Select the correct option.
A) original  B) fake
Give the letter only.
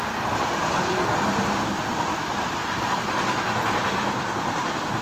A